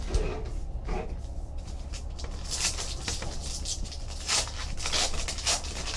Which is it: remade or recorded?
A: recorded